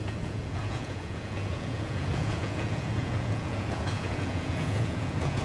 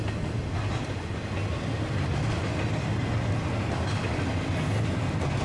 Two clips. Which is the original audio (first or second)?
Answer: second